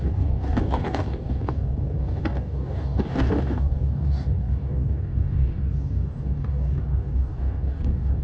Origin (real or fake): fake